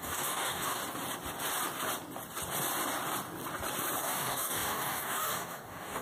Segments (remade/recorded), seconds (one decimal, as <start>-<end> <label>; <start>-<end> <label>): 0.0-0.8 remade; 0.8-4.0 recorded; 4.0-6.0 remade